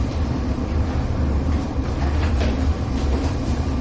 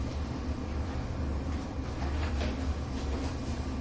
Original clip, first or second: second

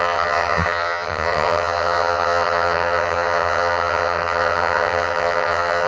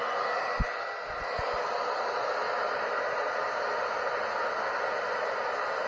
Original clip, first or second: second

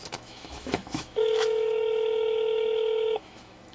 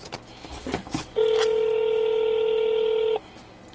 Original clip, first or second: second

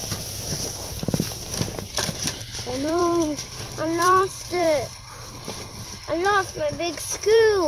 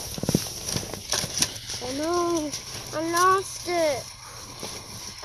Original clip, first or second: second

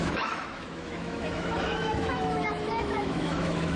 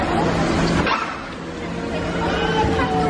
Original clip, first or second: second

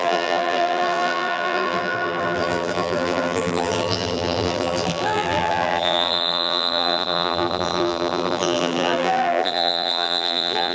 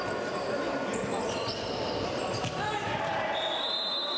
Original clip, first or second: second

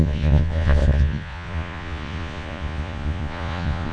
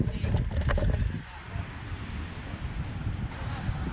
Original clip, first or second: second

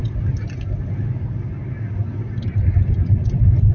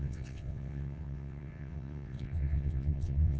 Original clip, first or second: first